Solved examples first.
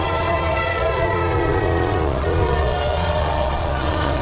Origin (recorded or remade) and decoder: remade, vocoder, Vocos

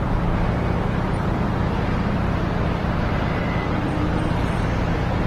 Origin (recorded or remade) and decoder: remade, vocoder, BigVGAN v2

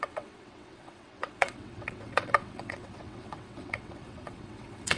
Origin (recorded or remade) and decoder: remade, vocoder, WaveNeXt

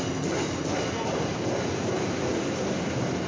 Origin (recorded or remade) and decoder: recorded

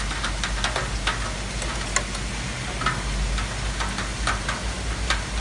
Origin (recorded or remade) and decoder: recorded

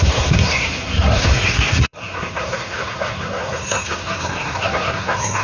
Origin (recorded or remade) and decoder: remade, codec, SNAC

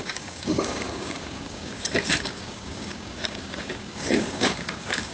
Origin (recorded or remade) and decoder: remade, codec, DAC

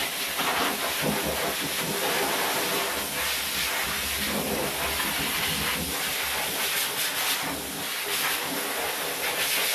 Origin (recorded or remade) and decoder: recorded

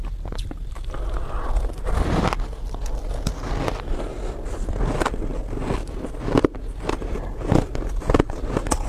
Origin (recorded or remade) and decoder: recorded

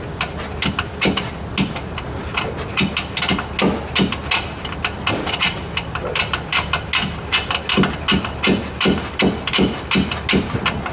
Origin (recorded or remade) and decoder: recorded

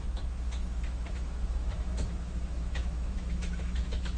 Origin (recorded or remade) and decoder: remade, autoencoder, DAC-VAE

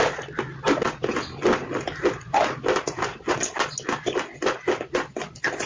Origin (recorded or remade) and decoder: recorded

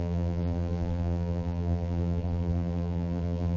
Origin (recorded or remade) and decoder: remade, vocoder, BigVGAN v2